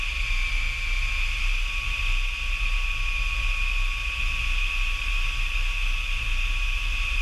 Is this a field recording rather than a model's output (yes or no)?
yes